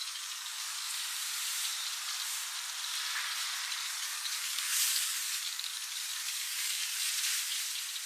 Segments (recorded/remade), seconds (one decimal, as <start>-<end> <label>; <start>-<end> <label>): 0.0-0.9 remade; 0.9-3.8 recorded; 3.8-7.1 remade; 7.1-8.1 recorded